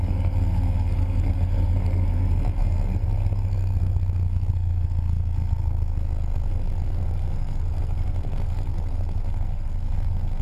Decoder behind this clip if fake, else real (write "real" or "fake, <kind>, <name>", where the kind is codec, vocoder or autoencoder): fake, codec, SNAC